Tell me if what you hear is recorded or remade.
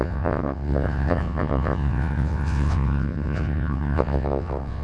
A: remade